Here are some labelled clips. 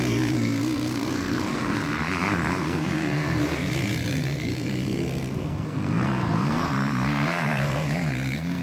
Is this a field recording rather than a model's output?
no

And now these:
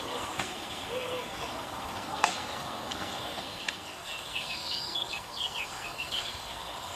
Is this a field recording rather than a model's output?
no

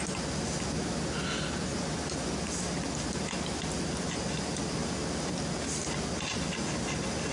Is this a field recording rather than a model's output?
yes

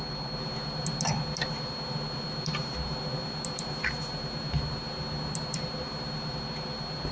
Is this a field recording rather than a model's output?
yes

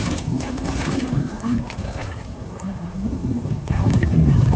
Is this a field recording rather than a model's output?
no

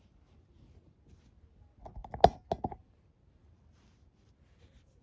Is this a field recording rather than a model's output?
yes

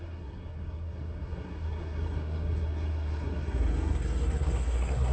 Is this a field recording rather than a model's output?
no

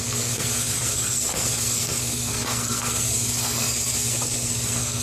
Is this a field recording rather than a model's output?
no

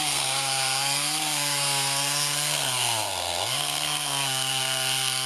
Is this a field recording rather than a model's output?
no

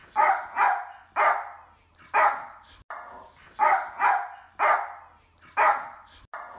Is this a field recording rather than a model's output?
yes